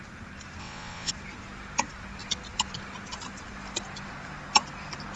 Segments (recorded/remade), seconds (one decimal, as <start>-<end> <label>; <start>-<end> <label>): 0.0-0.6 recorded; 0.6-1.1 remade; 1.1-5.2 recorded

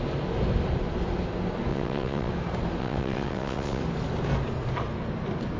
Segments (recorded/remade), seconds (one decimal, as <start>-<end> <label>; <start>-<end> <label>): 0.0-1.7 recorded; 1.7-2.3 remade; 2.3-2.8 recorded; 2.8-3.8 remade; 3.8-5.6 recorded

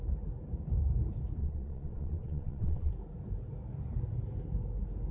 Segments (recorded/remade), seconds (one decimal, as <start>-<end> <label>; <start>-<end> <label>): 0.0-1.4 recorded; 1.4-2.9 remade; 2.9-5.1 recorded